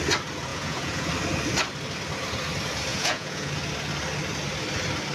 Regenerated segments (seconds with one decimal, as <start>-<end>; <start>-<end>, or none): 0.5-1.1; 2.9-3.5